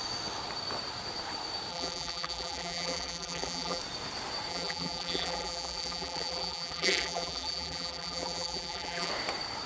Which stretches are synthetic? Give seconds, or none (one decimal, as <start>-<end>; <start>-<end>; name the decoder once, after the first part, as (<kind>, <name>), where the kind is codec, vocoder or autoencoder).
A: 1.7-3.8 (vocoder, BigVGAN v2); 4.5-9.1